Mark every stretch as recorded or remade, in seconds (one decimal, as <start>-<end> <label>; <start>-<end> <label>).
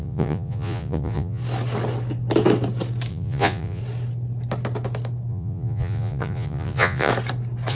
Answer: 0.0-1.4 remade; 1.4-3.1 recorded; 3.1-3.8 remade; 3.8-5.3 recorded; 5.3-7.1 remade; 7.1-7.7 recorded